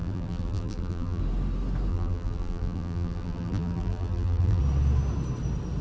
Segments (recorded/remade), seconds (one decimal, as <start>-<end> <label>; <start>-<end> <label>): 0.0-1.2 remade; 1.2-1.9 recorded; 1.9-4.6 remade; 4.6-5.8 recorded